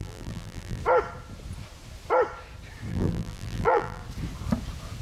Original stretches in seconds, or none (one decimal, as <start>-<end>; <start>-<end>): 0.8-2.9; 4.0-5.0